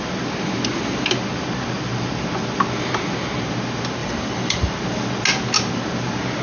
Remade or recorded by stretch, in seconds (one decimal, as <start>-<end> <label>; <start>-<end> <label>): 0.0-4.0 recorded; 4.0-4.7 remade; 4.7-6.4 recorded